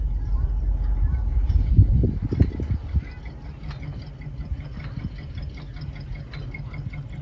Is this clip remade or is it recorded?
recorded